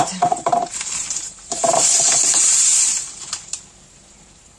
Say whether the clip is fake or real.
fake